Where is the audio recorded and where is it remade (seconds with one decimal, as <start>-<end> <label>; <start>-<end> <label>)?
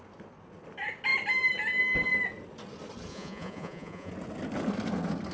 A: 0.0-3.1 recorded; 3.1-4.1 remade; 4.1-5.3 recorded